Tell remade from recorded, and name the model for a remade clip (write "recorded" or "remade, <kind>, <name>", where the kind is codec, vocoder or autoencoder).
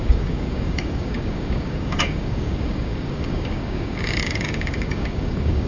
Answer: remade, codec, DAC